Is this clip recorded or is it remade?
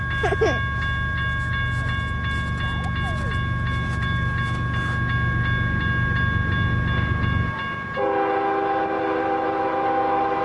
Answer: recorded